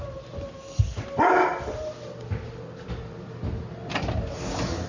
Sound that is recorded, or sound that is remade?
recorded